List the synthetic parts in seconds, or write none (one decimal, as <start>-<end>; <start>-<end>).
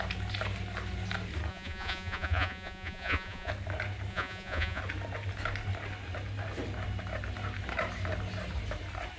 1.5-3.5; 4.1-4.8